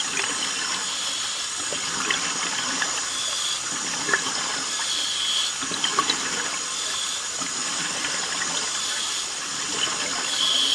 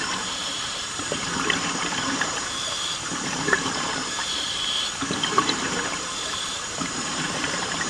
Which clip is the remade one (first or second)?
second